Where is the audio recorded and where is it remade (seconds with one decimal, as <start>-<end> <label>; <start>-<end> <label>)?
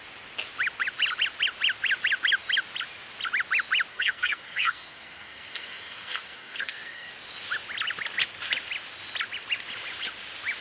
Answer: 0.0-3.9 recorded; 3.9-7.1 remade; 7.1-10.6 recorded